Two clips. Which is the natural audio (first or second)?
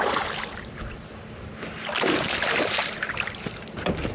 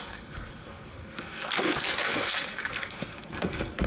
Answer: first